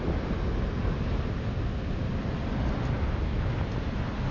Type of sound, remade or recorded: recorded